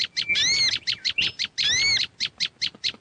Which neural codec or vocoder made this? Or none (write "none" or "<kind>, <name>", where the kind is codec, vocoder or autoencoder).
none